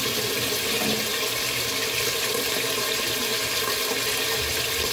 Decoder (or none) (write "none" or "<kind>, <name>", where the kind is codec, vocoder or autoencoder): none